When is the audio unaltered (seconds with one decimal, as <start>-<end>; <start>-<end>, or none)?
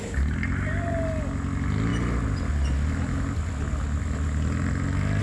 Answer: 0.0-5.2